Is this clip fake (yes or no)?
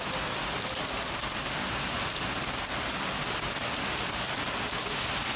no